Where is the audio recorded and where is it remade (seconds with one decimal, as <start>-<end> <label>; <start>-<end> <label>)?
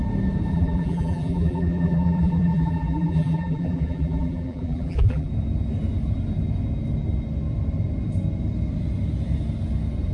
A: 0.0-0.5 recorded; 0.5-5.3 remade; 5.3-10.1 recorded